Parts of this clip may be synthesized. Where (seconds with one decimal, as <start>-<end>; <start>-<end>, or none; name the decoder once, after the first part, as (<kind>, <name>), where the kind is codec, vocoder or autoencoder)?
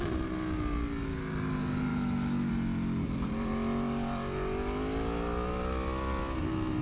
1.9-2.5 (autoencoder, DAC-VAE)